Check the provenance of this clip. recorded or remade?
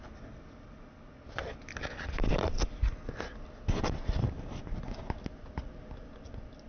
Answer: recorded